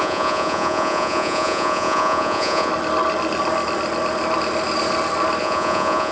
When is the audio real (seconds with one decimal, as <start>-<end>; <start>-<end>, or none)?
2.7-5.4

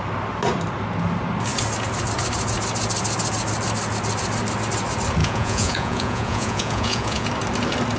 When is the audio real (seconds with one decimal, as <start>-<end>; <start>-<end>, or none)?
0.0-5.2; 7.3-8.0

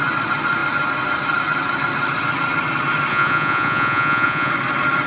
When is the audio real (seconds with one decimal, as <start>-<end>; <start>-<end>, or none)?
0.0-3.1; 4.5-5.1

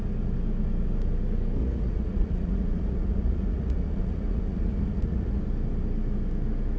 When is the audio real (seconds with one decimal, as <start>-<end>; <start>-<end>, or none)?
0.0-1.6; 5.4-6.8

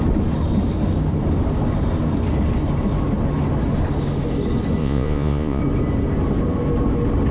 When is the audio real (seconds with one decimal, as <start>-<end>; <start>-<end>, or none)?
0.0-4.8; 5.6-7.3

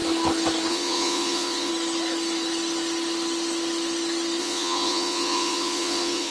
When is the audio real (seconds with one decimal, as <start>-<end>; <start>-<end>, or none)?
0.0-0.7; 1.7-4.4